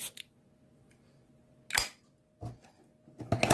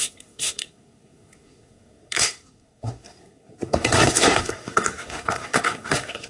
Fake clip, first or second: second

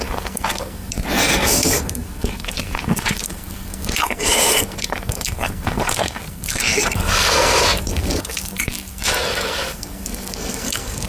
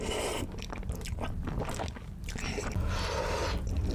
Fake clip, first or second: first